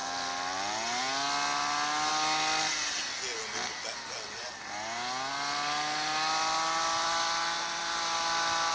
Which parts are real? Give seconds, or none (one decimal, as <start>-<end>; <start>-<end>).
0.0-8.7